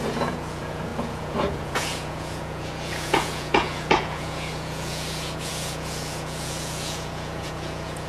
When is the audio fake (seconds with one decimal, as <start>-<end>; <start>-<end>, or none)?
0.0-8.1